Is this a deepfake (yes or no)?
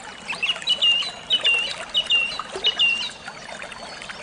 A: no